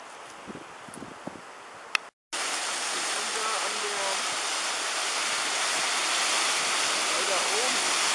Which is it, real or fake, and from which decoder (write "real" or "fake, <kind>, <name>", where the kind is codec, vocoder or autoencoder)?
real